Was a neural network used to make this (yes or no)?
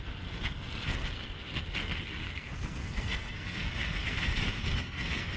yes